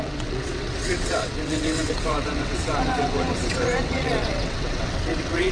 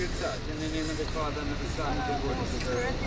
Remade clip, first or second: first